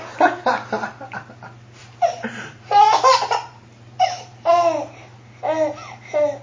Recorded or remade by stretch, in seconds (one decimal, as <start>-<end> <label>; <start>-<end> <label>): 0.0-1.8 recorded; 1.8-4.5 remade; 4.5-6.4 recorded